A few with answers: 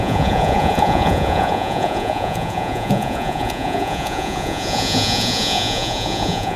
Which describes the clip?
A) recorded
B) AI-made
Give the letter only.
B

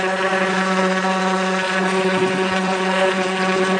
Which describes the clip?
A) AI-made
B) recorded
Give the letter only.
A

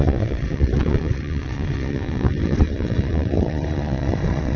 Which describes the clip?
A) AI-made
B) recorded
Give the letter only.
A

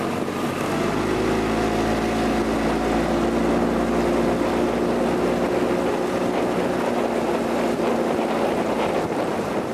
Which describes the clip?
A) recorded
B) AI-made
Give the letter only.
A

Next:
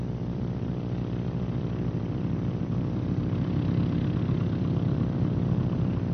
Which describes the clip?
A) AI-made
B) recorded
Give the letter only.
A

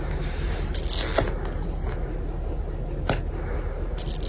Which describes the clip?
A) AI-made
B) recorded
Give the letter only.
B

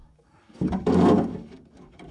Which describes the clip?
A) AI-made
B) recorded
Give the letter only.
A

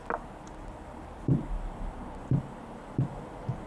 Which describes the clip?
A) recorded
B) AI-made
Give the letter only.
A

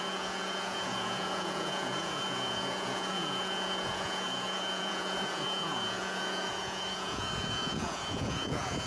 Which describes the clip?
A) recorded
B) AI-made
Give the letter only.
B